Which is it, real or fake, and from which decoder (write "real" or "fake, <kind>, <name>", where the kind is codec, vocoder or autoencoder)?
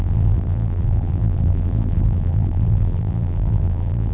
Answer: fake, vocoder, BigVGAN v2